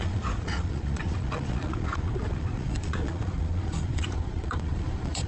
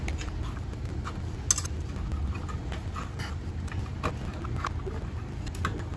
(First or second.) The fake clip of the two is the first